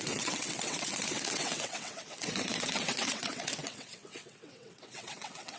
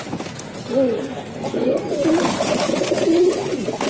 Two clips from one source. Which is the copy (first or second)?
first